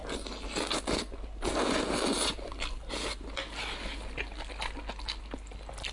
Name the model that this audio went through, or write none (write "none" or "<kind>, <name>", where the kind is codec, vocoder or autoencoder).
none